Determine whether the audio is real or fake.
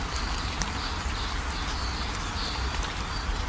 real